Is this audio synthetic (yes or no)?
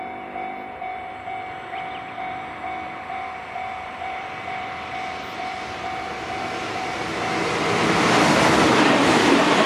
yes